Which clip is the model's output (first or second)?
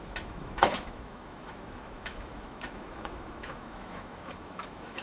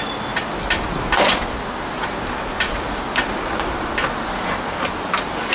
first